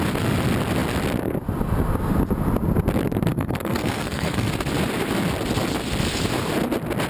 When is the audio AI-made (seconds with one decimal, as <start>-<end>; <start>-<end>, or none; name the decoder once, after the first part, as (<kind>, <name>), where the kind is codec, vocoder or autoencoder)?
3.3-4.5 (codec, SNAC)